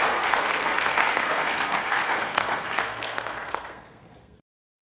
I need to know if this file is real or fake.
fake